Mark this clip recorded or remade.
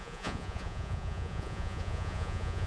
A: remade